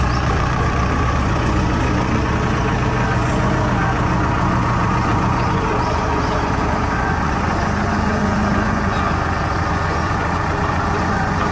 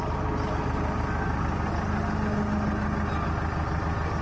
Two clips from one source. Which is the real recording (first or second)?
second